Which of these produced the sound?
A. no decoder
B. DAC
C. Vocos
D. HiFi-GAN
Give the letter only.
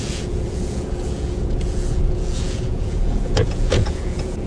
C